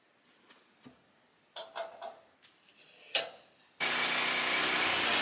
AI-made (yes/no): no